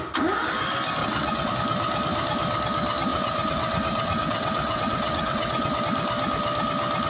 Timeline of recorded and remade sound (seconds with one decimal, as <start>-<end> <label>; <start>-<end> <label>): 0.0-1.0 recorded; 1.0-1.5 remade; 1.5-3.1 recorded; 3.1-5.8 remade; 5.8-7.1 recorded